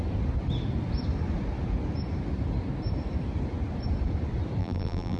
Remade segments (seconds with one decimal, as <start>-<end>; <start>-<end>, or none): 4.6-5.2